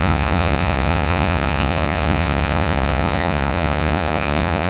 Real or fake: fake